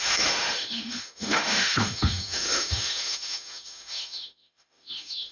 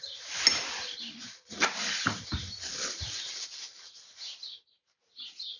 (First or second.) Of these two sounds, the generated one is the first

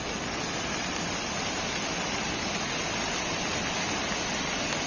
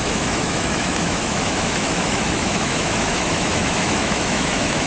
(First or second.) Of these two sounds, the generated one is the second